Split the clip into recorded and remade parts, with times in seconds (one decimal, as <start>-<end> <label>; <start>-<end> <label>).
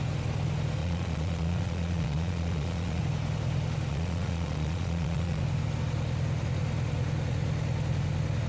0.0-0.8 recorded; 0.8-3.0 remade; 3.0-3.9 recorded; 3.9-5.4 remade; 5.4-8.5 recorded